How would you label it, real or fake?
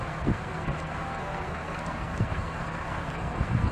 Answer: fake